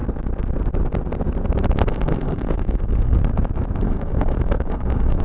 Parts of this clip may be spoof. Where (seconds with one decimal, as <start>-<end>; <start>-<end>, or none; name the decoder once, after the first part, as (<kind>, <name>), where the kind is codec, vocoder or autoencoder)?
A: 1.8-3.2 (codec, SNAC); 3.8-5.2